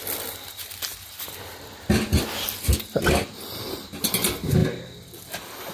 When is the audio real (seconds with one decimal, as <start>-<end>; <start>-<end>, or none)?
0.0-5.7